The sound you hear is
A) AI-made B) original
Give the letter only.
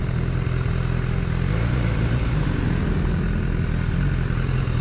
B